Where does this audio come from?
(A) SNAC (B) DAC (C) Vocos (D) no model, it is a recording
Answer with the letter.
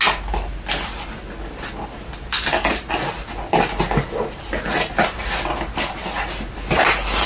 D